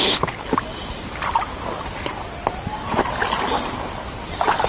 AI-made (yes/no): no